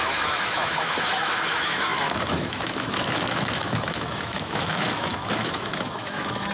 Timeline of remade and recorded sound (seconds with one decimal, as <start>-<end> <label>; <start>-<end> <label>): 0.0-6.5 remade